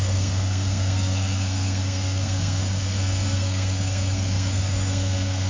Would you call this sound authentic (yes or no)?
no